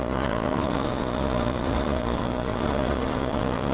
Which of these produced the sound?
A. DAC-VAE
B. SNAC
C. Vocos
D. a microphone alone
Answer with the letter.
C